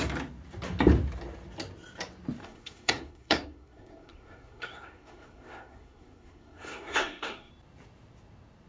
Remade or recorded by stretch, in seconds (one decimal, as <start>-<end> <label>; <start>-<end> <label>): 0.0-2.4 recorded; 2.4-7.5 remade; 7.5-8.7 recorded